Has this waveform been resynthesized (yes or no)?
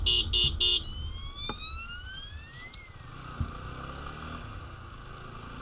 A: no